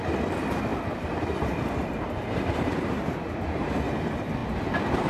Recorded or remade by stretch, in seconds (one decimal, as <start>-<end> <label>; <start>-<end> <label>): 0.0-0.7 recorded; 0.7-3.8 remade; 3.8-5.1 recorded